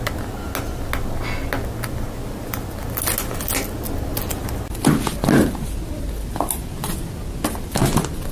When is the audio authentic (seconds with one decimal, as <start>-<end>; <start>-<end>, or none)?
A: 0.0-8.3